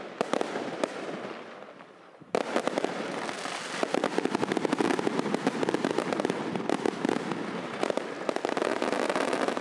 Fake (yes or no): no